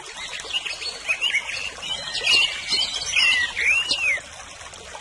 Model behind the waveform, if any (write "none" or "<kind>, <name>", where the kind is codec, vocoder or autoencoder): none